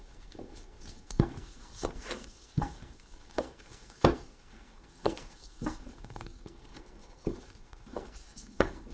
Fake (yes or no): yes